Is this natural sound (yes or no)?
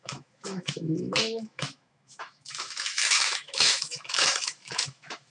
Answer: no